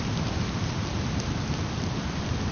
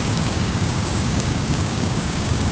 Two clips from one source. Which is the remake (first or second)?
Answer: second